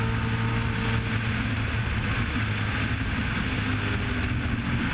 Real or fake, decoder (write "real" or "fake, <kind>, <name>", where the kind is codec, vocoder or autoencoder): real